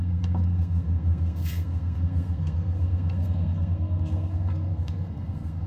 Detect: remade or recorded remade